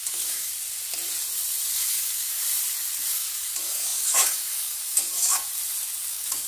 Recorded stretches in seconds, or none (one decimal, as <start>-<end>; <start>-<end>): 0.5-1.7; 2.4-3.1; 5.5-6.1